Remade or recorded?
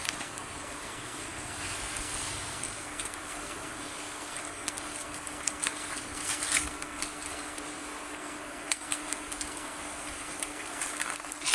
remade